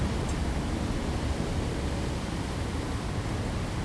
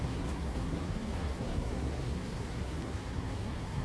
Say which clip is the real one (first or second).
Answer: first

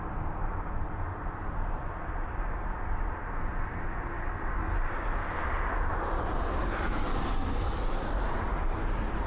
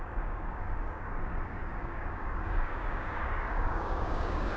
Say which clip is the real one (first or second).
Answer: first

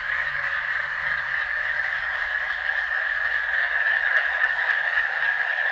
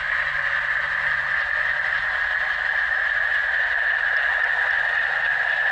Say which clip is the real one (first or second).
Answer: second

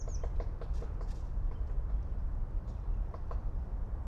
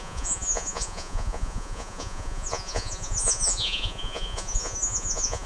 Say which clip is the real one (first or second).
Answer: first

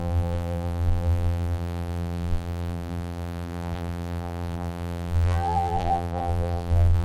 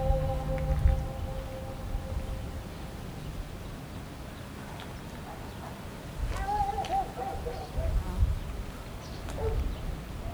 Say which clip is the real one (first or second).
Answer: second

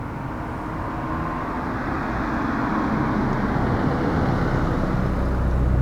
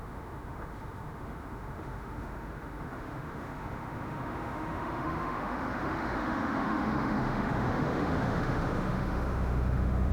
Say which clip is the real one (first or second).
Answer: first